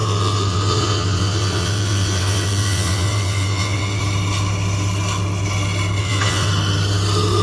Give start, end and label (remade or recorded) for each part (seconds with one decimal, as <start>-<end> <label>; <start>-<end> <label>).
0.0-4.0 remade; 4.0-6.0 recorded; 6.0-6.5 remade; 6.5-7.4 recorded